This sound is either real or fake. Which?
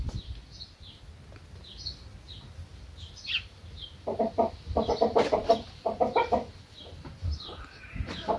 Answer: real